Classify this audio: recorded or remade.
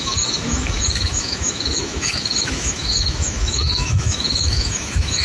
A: remade